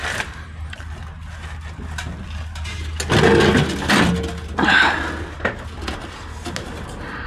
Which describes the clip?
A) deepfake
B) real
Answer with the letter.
B